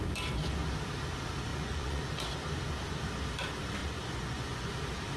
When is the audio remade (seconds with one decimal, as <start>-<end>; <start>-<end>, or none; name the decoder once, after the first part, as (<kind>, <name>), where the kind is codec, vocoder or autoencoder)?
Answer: 1.5-2.0 (vocoder, Vocos); 3.8-4.7